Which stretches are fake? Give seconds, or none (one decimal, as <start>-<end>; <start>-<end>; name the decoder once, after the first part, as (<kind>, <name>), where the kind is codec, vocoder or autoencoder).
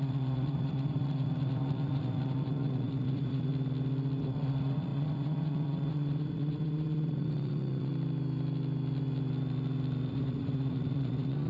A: 0.0-3.5 (vocoder, Vocos); 4.2-7.9; 10.1-11.5